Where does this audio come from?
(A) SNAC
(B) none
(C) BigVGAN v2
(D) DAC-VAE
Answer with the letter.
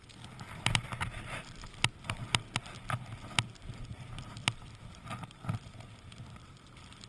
B